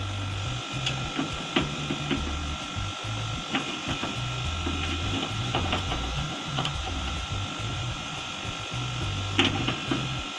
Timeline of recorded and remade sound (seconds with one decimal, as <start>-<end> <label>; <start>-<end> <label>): 0.0-5.4 recorded; 5.4-7.3 remade; 7.3-7.7 recorded; 7.7-8.3 remade; 8.3-10.4 recorded